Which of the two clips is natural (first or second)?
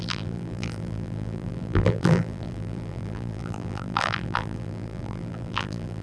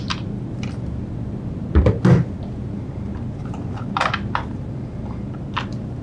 second